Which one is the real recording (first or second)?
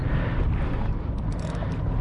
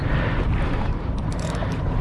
first